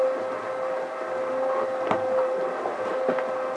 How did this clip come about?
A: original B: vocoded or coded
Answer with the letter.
A